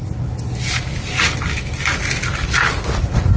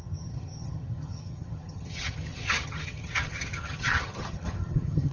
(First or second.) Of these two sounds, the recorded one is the first